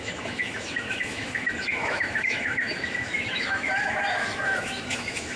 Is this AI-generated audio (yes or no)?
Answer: yes